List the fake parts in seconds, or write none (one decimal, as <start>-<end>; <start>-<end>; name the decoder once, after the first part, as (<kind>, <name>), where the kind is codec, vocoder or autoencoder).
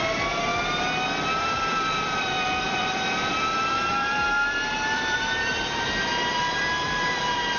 0.0-0.5 (vocoder, BigVGAN v2); 1.4-7.6